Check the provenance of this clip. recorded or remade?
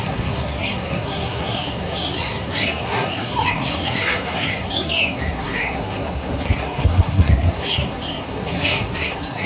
remade